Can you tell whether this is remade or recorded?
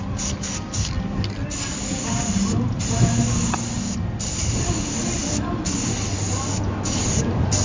recorded